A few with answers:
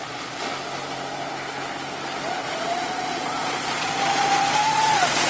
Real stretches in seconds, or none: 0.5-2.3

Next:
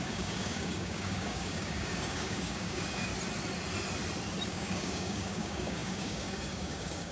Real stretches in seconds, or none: 3.1-4.5

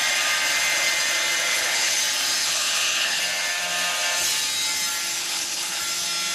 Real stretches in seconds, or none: 0.0-1.5; 2.0-2.4; 3.2-5.2; 5.8-6.3

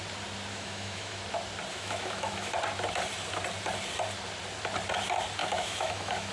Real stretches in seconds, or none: 0.0-0.5; 1.2-1.7; 2.5-5.4

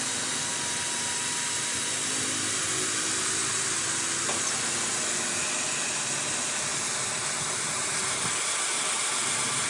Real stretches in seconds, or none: 0.0-9.7

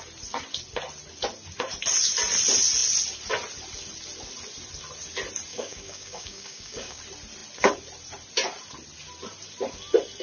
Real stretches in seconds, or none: 0.0-5.5; 7.0-10.2

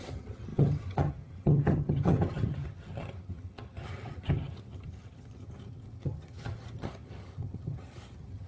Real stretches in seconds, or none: none